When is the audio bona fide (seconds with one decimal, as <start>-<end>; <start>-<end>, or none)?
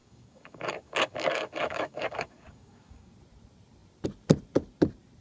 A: 3.1-5.2